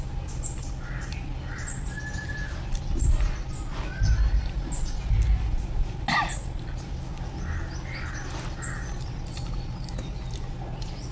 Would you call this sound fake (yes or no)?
no